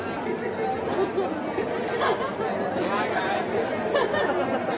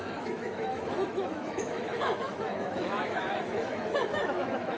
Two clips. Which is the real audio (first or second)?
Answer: first